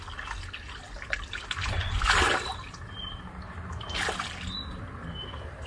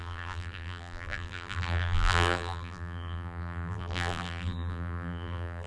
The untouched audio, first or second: first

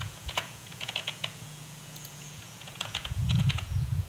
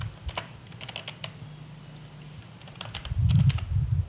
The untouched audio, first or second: second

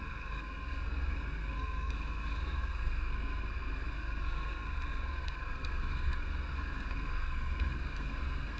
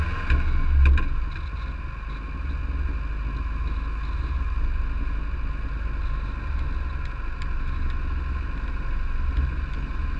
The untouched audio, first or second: second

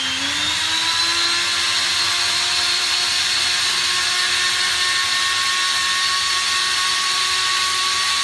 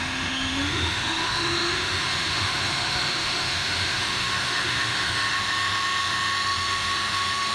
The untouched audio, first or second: first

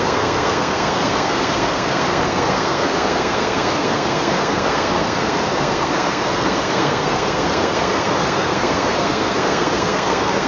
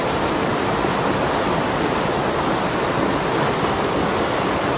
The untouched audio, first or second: second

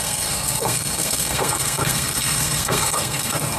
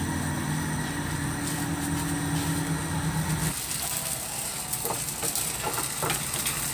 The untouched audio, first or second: second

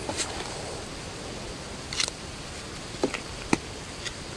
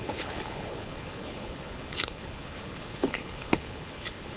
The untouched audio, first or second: first